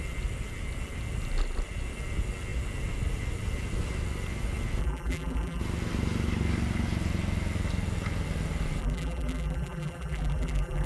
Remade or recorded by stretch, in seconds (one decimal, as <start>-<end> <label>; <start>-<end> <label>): 0.0-4.8 recorded; 4.8-5.6 remade; 5.6-8.8 recorded; 8.8-10.9 remade